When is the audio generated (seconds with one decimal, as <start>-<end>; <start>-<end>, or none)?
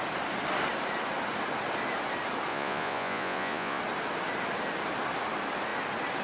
2.5-3.8